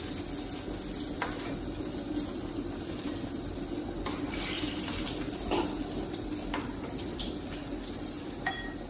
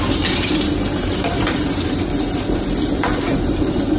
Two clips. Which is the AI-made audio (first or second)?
second